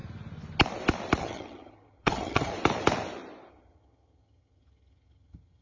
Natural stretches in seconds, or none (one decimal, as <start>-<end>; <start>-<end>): 0.0-1.2; 2.5-3.5